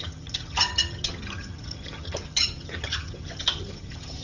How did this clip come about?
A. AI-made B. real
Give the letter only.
A